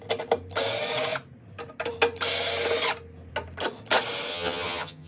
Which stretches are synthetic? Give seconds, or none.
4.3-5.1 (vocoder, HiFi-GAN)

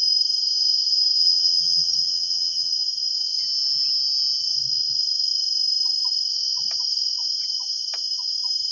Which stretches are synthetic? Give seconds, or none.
1.2-2.7 (vocoder, HiFi-GAN)

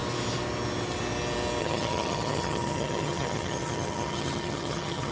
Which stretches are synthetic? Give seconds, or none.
1.6-5.1 (vocoder, HiFi-GAN)

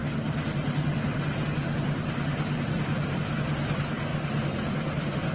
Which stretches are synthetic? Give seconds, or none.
none